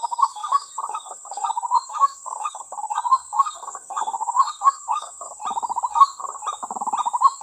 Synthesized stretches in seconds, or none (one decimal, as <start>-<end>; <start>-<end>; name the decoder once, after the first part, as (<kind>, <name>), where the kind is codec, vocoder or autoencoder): 0.0-5.4 (codec, SNAC); 5.9-6.4